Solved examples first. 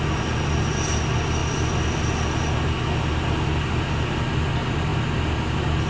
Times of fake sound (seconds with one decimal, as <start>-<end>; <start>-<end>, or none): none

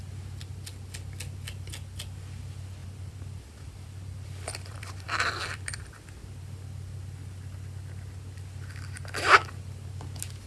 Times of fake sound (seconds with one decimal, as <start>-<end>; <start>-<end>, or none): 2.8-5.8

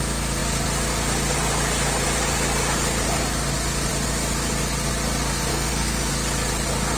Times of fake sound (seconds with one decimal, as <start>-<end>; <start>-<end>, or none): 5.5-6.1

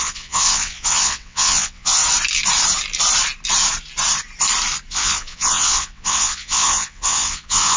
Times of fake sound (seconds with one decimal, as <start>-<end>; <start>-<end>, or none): 0.0-2.0; 4.9-7.8

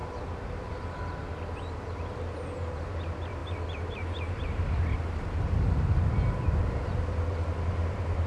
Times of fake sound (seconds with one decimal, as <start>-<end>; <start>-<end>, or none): none

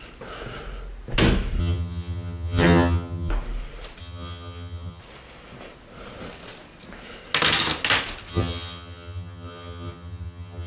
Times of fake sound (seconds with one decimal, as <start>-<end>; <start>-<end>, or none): 1.6-3.3; 4.0-5.0; 8.3-10.7

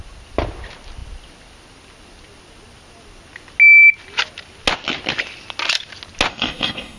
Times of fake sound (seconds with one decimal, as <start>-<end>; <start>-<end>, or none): 6.3-7.0

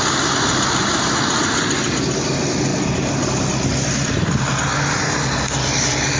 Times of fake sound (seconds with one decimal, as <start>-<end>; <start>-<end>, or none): none